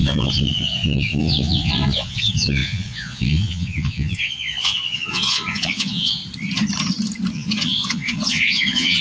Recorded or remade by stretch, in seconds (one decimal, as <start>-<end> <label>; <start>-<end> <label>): 0.0-6.2 remade; 6.2-7.3 recorded; 7.3-9.0 remade